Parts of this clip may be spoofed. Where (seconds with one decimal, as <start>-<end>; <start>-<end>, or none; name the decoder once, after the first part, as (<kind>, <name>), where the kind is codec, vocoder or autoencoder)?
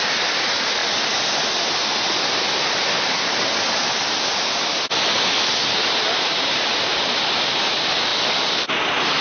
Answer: none